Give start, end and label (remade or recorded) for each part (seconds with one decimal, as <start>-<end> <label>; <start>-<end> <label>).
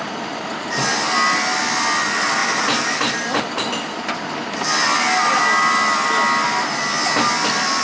0.0-7.8 recorded